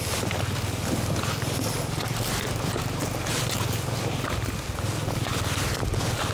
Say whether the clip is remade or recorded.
recorded